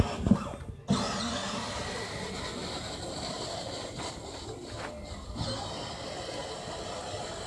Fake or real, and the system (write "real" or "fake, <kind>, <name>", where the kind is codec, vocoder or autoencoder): real